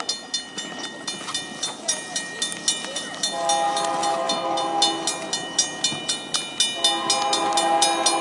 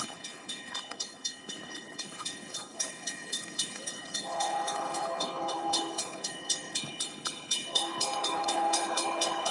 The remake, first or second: second